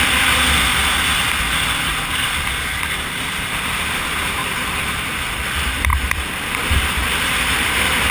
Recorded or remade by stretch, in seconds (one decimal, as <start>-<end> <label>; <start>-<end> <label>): 0.0-4.4 recorded; 4.4-5.2 remade; 5.2-8.1 recorded